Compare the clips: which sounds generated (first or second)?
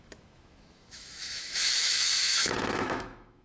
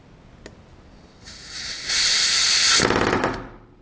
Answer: first